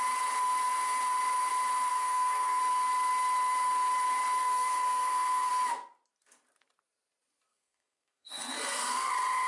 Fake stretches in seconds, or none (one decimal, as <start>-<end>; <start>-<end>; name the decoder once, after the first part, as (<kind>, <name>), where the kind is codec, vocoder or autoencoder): 1.9-2.6 (codec, SNAC); 4.4-5.5; 7.5-9.1